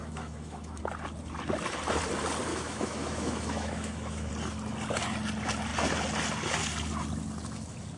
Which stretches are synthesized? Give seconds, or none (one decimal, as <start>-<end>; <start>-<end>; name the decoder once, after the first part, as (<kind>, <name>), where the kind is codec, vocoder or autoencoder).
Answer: 0.0-0.8 (autoencoder, DAC-VAE); 2.5-4.3